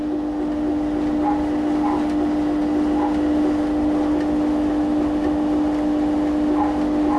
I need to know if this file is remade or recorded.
recorded